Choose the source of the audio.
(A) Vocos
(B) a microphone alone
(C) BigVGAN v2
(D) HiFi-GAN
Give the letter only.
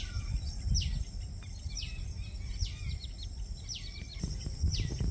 B